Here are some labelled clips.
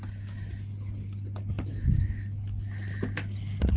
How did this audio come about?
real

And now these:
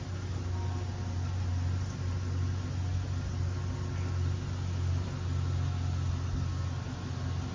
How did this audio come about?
real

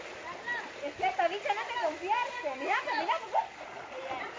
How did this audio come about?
real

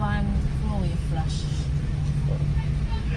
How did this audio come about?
real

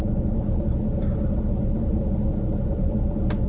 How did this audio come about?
real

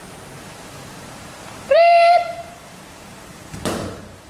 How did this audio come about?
fake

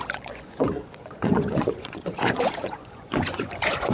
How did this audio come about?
fake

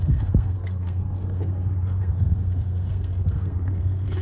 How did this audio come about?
fake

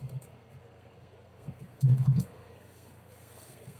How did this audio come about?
fake